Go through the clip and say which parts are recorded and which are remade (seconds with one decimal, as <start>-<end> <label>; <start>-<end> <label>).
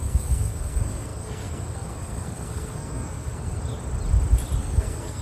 0.0-3.6 remade; 3.6-4.6 recorded; 4.6-5.2 remade